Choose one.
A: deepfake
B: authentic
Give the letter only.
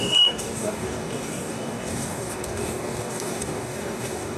A